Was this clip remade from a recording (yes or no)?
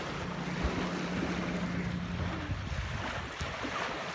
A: no